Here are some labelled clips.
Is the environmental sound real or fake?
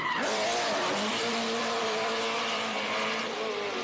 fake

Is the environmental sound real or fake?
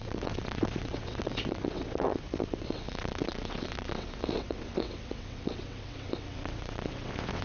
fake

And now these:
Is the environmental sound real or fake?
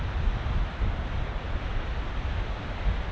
real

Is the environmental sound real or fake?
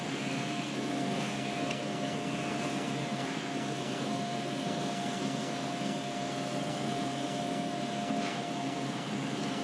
fake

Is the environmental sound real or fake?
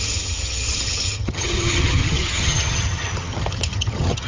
fake